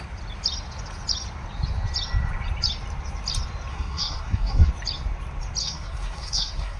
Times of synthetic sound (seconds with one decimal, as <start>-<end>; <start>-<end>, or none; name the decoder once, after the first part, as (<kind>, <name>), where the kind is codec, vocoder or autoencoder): 3.7-4.7 (codec, SNAC); 5.6-6.8